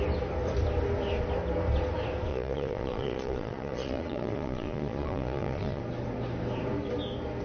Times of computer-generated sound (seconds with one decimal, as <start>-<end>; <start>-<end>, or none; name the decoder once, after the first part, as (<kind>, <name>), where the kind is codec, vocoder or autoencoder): 2.3-5.8 (vocoder, Vocos)